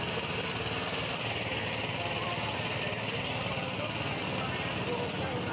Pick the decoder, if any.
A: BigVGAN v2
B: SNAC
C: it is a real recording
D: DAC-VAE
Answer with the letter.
C